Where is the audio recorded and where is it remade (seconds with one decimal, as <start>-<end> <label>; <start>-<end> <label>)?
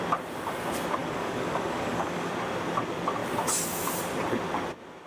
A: 0.0-1.0 recorded; 1.0-2.3 remade; 2.3-5.1 recorded